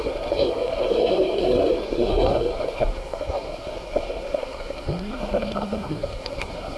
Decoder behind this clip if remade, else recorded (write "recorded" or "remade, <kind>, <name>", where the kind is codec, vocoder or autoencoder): remade, codec, SNAC